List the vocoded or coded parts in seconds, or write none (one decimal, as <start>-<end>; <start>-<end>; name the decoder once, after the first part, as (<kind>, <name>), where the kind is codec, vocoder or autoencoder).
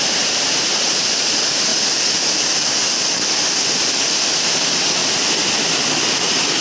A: 0.0-1.7 (vocoder, BigVGAN v2); 4.4-5.0; 5.7-6.6